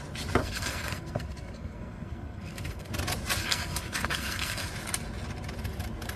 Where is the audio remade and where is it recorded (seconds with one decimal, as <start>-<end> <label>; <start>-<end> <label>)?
0.0-0.4 recorded; 0.4-2.9 remade; 2.9-3.4 recorded; 3.4-4.7 remade; 4.7-6.2 recorded